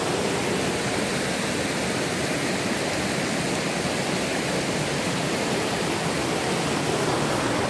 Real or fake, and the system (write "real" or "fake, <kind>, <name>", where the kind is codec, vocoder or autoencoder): real